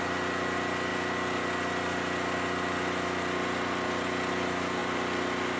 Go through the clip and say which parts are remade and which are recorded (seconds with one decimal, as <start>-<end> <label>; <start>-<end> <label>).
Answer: 0.0-5.6 recorded